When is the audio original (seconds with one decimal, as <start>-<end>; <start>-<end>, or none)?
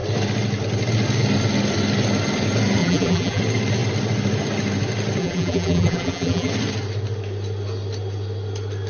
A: 0.0-2.8; 3.4-5.2; 6.5-8.9